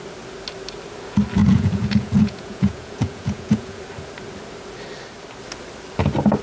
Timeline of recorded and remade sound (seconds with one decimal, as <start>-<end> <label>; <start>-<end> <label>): 0.0-1.4 recorded; 1.4-3.8 remade; 3.8-6.4 recorded